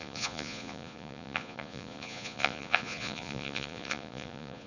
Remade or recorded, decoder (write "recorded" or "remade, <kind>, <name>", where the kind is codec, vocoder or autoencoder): remade, vocoder, Vocos